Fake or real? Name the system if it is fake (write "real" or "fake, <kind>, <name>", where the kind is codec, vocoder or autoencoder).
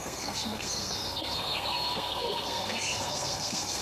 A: fake, codec, SNAC